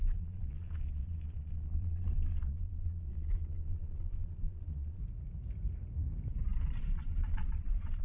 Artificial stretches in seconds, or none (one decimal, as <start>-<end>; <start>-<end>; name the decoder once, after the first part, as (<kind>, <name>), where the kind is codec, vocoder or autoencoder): 0.0-5.0 (vocoder, Vocos); 6.8-8.0